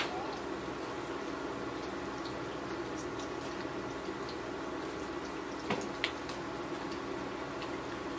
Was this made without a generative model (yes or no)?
yes